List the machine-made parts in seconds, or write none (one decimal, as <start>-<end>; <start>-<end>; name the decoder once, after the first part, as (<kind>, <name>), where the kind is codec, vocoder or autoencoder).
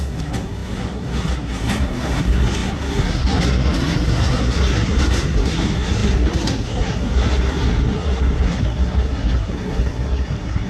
0.0-10.7 (codec, SNAC)